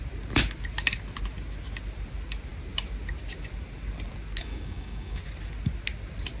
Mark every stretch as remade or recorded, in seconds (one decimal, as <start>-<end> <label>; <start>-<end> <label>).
0.0-4.4 recorded; 4.4-5.2 remade; 5.2-6.4 recorded

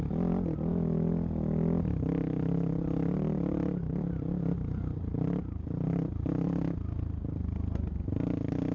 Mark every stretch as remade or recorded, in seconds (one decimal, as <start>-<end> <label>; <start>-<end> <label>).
0.0-8.7 recorded

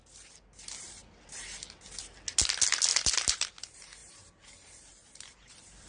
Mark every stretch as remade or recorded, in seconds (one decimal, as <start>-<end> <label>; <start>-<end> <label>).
0.0-2.9 recorded; 2.9-3.5 remade; 3.5-4.0 recorded; 4.0-5.3 remade; 5.3-5.9 recorded

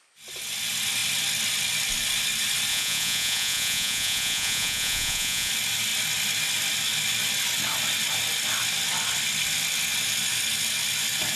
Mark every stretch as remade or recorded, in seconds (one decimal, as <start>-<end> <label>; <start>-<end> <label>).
0.0-2.7 recorded; 2.7-5.5 remade; 5.5-11.4 recorded

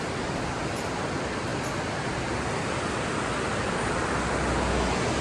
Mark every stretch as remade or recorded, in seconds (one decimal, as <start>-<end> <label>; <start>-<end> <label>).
0.0-5.2 recorded

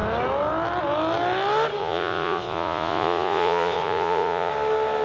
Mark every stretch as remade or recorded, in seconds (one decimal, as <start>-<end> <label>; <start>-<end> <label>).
0.0-1.8 recorded; 1.8-4.5 remade; 4.5-5.0 recorded

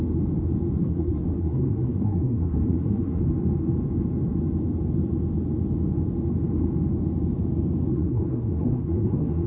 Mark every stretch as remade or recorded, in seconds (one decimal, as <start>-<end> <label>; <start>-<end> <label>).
0.0-0.8 recorded; 0.8-3.2 remade; 3.2-7.9 recorded; 7.9-9.5 remade